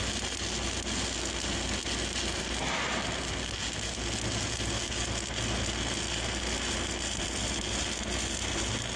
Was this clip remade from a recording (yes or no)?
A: no